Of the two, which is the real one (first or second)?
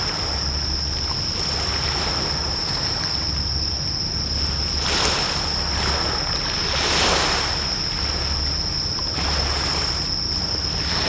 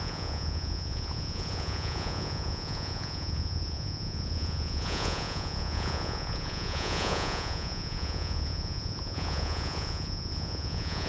first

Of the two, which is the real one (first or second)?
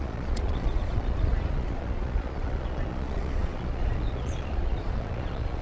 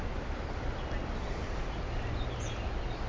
second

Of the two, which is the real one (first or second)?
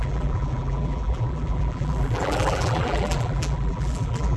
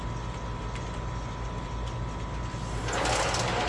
second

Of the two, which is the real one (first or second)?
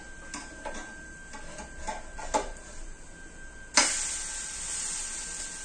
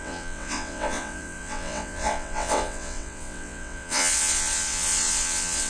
first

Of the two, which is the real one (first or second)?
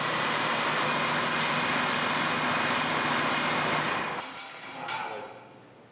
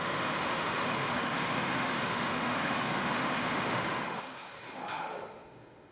first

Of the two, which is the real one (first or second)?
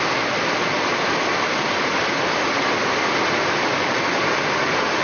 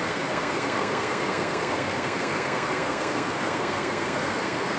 first